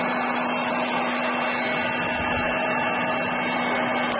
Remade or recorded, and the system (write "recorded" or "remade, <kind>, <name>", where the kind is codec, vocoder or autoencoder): recorded